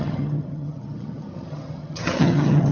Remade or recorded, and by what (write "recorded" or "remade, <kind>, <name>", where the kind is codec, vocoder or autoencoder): remade, vocoder, HiFi-GAN